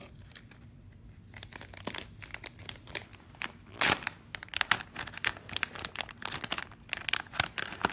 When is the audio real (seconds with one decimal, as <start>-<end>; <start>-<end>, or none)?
0.0-7.9